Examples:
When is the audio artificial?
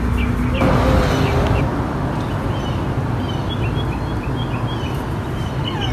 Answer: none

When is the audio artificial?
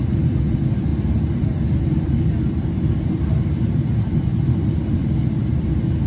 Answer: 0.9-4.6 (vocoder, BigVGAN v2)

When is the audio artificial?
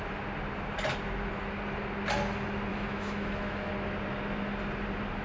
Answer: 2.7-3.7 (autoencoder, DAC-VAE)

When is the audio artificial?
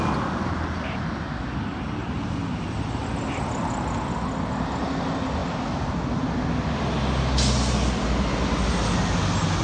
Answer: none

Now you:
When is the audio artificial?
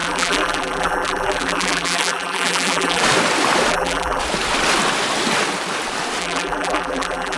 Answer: 0.0-3.0 (vocoder, BigVGAN v2); 3.7-4.2; 6.2-7.4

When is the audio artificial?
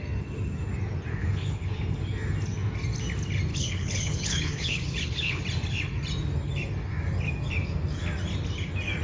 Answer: 1.1-1.8 (codec, HILCodec); 3.5-5.4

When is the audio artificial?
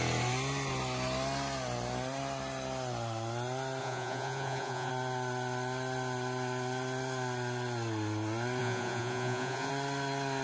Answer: 3.8-4.9 (vocoder, Vocos); 8.6-9.7